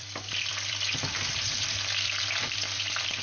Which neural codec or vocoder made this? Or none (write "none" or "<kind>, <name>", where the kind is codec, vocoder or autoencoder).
vocoder, BigVGAN v2